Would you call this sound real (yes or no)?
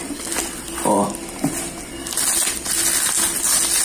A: yes